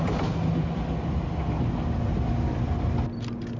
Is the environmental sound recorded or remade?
recorded